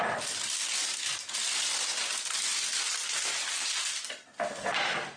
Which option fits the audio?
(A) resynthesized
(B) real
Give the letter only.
B